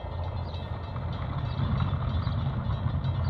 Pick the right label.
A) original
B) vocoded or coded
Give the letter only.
A